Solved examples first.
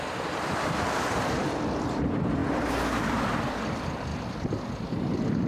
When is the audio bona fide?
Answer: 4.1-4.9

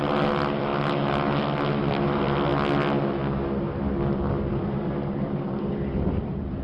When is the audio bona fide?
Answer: 0.7-1.9; 2.5-4.3

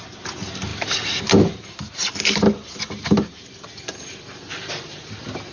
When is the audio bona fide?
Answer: 0.0-5.5